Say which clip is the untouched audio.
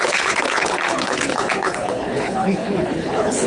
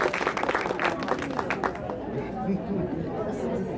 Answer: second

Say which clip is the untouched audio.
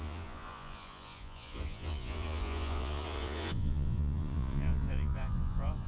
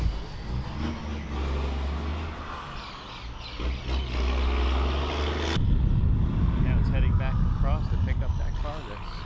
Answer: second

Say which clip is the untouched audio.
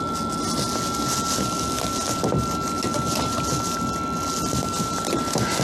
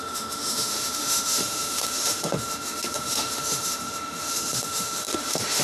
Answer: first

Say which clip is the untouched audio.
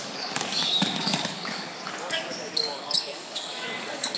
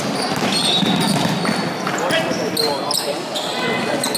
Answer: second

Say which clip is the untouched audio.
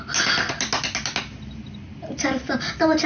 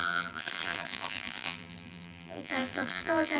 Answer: first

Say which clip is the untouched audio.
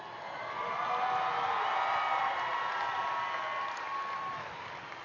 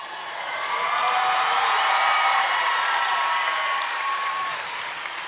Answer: first